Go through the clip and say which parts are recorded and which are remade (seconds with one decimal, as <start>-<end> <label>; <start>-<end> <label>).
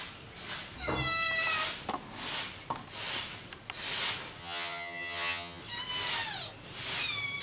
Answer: 0.0-4.4 recorded; 4.4-5.6 remade; 5.6-7.4 recorded